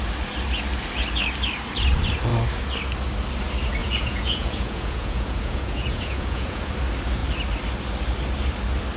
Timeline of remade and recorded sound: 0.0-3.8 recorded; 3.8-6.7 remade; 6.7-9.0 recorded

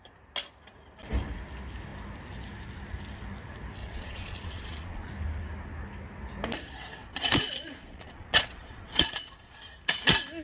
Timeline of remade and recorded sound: 0.0-3.8 recorded; 3.8-5.1 remade; 5.1-7.0 recorded; 7.0-9.6 remade; 9.6-10.4 recorded

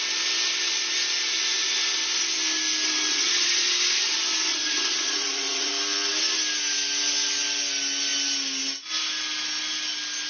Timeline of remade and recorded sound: 0.0-3.1 recorded; 3.1-3.7 remade; 3.7-4.5 recorded; 4.5-5.7 remade; 5.7-10.3 recorded

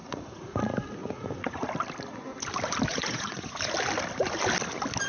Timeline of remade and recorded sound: 0.0-0.6 remade; 0.6-1.0 recorded; 1.0-1.7 remade; 1.7-2.9 recorded; 2.9-3.6 remade; 3.6-5.1 recorded

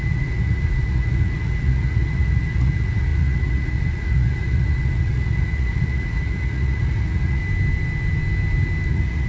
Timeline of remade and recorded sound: 0.0-7.4 remade; 7.4-8.9 recorded; 8.9-9.3 remade